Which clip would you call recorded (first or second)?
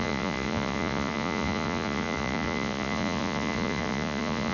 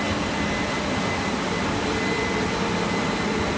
second